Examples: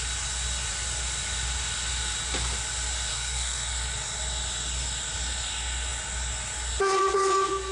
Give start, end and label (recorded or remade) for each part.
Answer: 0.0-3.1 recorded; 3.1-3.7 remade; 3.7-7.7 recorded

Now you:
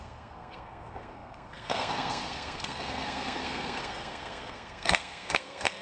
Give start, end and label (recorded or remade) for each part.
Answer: 0.0-5.8 remade

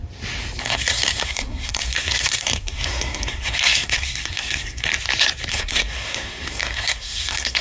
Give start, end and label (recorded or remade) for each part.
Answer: 0.0-0.6 recorded; 0.6-4.9 remade; 4.9-5.5 recorded; 5.5-7.6 remade

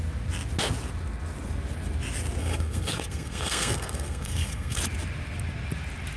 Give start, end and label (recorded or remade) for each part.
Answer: 0.0-2.4 recorded; 2.4-4.8 remade; 4.8-6.2 recorded